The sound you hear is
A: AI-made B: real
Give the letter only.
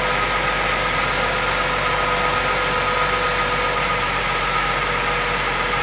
B